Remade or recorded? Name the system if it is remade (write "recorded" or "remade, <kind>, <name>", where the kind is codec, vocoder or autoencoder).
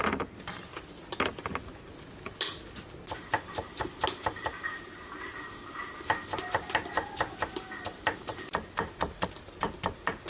recorded